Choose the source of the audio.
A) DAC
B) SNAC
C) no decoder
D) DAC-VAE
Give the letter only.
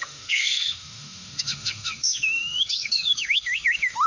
D